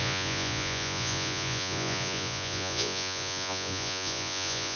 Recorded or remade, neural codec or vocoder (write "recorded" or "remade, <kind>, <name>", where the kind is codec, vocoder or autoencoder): remade, vocoder, Vocos